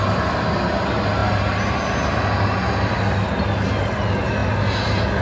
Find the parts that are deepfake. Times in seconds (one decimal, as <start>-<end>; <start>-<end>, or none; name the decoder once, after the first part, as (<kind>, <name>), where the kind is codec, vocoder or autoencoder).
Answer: none